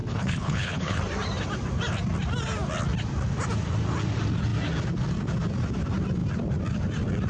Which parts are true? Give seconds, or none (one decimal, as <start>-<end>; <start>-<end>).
1.0-7.3